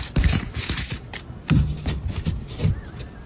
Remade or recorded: recorded